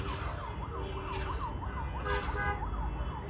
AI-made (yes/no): no